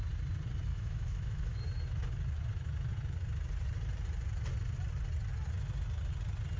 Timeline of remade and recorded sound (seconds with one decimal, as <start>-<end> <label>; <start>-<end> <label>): 0.0-0.7 recorded; 0.7-1.6 remade; 1.6-6.6 recorded